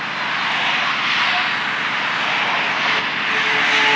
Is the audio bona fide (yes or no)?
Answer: yes